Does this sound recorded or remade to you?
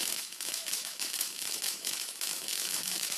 remade